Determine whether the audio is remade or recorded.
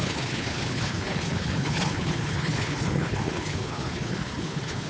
remade